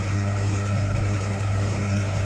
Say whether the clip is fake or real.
fake